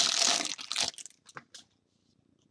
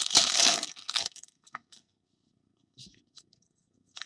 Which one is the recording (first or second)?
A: first